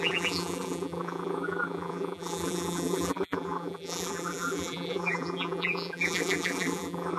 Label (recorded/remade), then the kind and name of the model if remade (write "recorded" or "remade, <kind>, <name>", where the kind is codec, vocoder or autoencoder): remade, vocoder, BigVGAN v2